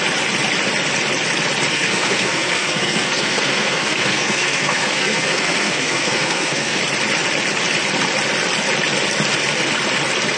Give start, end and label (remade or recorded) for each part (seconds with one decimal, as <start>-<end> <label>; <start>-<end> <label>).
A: 0.0-1.7 recorded; 1.7-6.8 remade; 6.8-10.4 recorded